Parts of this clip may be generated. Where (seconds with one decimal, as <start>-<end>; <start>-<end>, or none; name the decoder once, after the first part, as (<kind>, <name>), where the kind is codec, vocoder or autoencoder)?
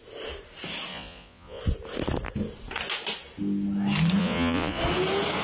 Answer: 0.9-1.6 (vocoder, Vocos); 4.2-4.8